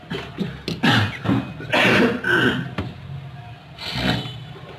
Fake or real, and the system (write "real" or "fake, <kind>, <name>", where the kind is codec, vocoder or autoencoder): real